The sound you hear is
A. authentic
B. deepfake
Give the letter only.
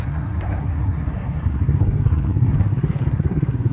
B